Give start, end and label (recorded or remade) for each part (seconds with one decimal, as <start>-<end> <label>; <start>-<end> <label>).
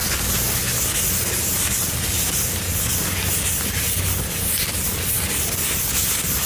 0.0-6.5 recorded